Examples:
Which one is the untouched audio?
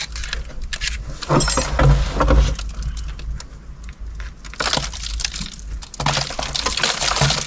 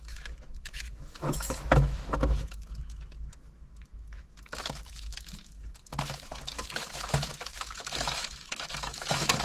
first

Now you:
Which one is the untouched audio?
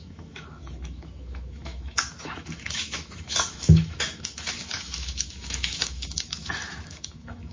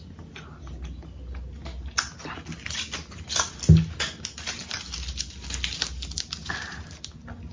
second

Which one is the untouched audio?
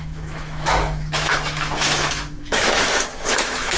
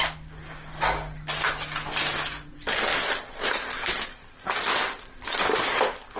second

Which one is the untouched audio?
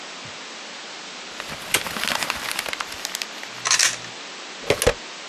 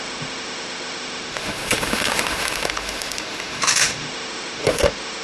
first